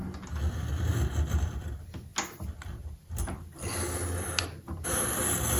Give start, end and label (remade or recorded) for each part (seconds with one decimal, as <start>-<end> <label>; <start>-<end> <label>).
0.0-5.6 recorded